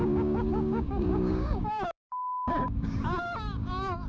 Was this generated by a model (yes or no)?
yes